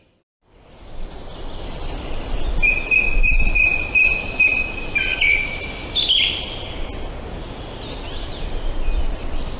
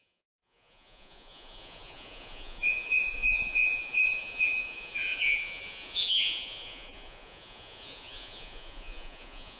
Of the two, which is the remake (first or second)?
second